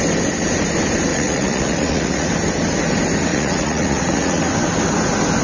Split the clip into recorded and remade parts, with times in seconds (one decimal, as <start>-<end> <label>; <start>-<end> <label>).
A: 0.0-1.1 recorded; 1.1-2.3 remade; 2.3-3.3 recorded; 3.3-4.4 remade; 4.4-5.4 recorded